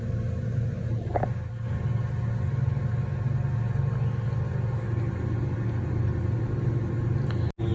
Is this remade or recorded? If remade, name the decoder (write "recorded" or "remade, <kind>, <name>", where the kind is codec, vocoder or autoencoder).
recorded